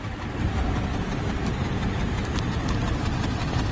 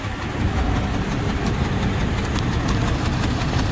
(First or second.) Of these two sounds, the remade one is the first